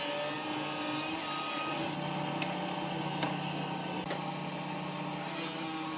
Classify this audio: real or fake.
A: real